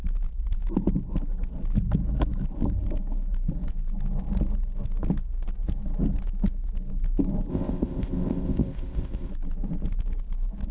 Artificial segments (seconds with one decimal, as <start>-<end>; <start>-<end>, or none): 7.5-9.3